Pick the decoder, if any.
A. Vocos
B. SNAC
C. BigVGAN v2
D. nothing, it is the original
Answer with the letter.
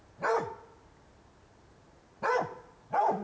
D